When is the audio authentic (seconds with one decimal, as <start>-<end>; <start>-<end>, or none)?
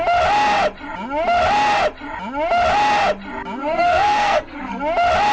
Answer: 0.0-3.6; 4.8-5.3